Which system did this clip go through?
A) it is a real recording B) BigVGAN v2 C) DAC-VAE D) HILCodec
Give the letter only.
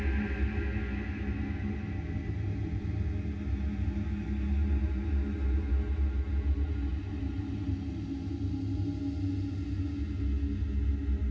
A